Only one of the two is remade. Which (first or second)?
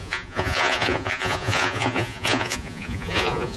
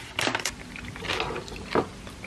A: first